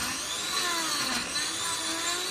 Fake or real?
real